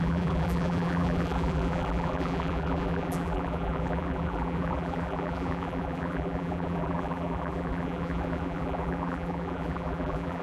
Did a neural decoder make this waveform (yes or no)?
yes